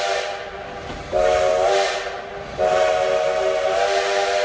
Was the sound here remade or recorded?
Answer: recorded